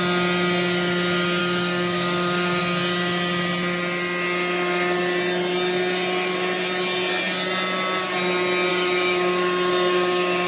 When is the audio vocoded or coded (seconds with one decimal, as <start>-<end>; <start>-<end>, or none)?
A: 1.4-2.6; 8.7-10.5